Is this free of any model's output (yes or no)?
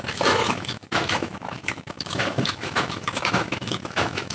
no